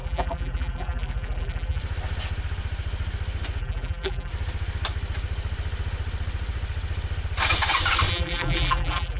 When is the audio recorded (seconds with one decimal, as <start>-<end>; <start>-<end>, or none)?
1.8-3.6; 4.3-8.1